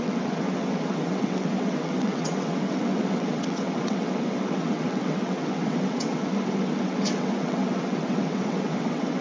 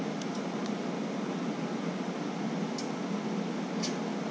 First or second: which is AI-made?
first